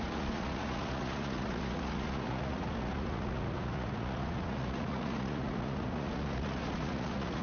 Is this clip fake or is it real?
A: fake